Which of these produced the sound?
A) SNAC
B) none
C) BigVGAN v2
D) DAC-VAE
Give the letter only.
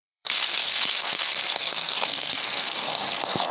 A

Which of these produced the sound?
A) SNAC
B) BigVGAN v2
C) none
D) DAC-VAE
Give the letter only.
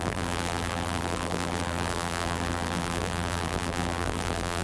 B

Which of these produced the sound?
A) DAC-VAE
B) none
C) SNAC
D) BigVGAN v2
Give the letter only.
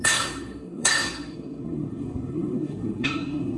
C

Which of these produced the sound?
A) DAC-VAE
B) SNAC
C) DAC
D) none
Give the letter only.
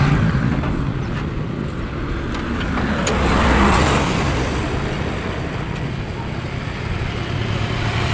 D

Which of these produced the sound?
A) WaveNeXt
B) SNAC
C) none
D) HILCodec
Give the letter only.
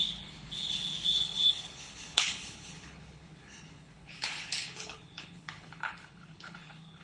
D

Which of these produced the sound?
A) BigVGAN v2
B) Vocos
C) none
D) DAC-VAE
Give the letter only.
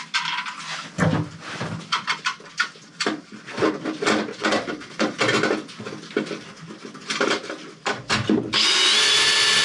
C